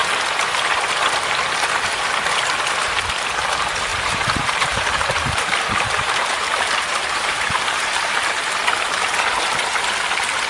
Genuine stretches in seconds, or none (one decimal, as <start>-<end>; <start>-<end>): 0.0-3.9; 8.5-10.5